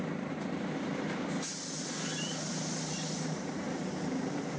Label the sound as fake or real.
real